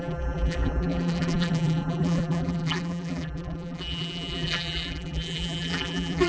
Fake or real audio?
fake